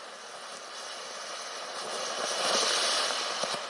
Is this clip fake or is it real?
real